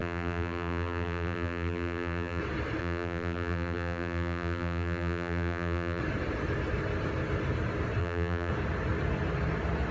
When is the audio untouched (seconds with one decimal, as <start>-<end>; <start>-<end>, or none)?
2.4-2.8; 6.0-8.0; 8.5-9.9